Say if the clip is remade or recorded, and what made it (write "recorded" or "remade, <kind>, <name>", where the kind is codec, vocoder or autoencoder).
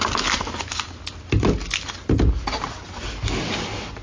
recorded